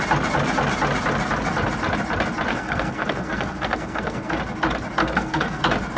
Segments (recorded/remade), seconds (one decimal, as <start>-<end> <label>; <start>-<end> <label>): 0.0-2.5 recorded; 2.5-4.4 remade; 4.4-5.0 recorded; 5.0-5.6 remade; 5.6-6.0 recorded